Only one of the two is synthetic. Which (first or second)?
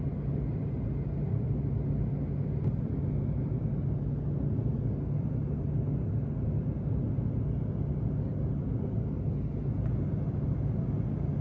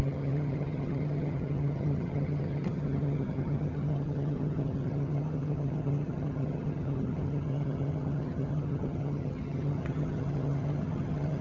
second